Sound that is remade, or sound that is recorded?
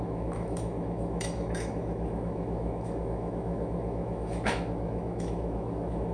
remade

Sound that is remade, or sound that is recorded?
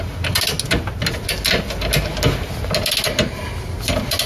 recorded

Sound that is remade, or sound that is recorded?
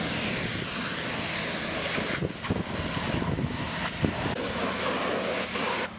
recorded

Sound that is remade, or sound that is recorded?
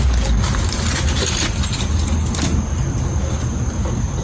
recorded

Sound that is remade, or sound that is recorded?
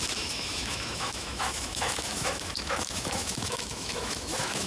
remade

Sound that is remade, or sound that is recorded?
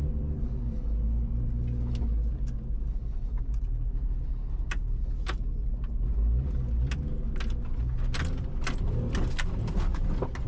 recorded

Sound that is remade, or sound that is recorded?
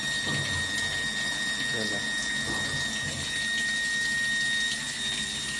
recorded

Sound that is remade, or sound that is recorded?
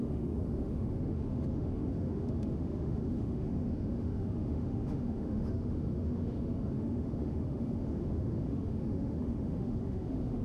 remade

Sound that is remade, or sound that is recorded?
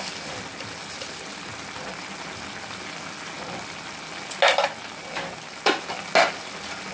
recorded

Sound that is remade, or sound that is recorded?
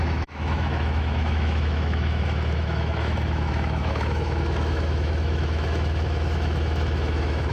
remade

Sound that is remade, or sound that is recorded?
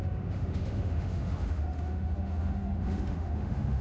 remade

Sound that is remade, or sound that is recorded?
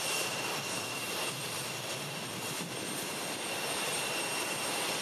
recorded